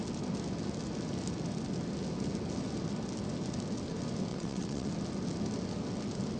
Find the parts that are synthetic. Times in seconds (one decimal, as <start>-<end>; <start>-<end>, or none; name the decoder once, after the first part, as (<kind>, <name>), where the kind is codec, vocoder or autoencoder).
4.3-4.9 (vocoder, WaveNeXt)